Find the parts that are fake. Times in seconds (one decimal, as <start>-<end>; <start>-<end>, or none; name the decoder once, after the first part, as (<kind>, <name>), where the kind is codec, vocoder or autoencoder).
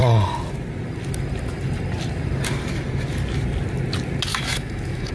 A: 4.3-5.1 (autoencoder, DAC-VAE)